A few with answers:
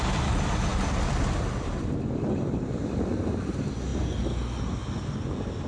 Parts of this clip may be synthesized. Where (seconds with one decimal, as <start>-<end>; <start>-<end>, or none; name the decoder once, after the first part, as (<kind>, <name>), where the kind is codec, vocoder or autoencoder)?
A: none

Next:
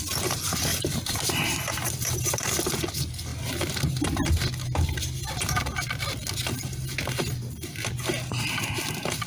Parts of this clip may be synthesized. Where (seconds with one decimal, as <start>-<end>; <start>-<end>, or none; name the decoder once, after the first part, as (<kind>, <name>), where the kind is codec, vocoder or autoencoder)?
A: 0.0-3.3 (vocoder, BigVGAN v2); 7.5-9.3

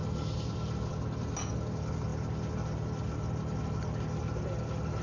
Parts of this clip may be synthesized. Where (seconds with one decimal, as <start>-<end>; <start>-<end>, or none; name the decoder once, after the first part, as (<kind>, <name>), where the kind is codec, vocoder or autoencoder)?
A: none

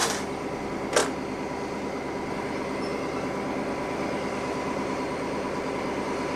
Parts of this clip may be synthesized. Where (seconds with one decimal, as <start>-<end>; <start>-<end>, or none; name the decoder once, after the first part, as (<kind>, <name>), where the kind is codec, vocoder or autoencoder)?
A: 0.0-0.6 (vocoder, BigVGAN v2)

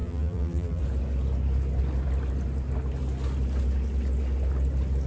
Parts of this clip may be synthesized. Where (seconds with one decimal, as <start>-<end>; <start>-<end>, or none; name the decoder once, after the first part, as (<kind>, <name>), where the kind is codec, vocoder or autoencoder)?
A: 0.0-0.8 (vocoder, BigVGAN v2)

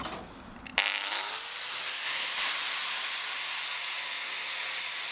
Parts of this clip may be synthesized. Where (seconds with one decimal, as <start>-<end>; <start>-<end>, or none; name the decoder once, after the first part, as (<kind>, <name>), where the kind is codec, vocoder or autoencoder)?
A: none